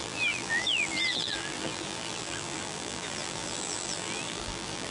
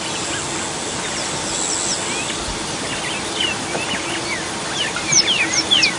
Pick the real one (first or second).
second